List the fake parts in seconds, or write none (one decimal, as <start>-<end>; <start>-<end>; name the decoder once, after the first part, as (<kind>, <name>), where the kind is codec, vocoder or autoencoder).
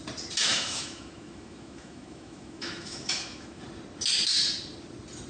0.4-3.6 (autoencoder, DAC-VAE)